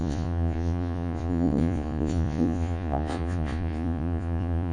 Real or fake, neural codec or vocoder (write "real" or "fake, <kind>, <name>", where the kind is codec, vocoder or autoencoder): fake, vocoder, Vocos